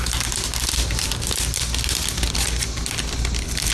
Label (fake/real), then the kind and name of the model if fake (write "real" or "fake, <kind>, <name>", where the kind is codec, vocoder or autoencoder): real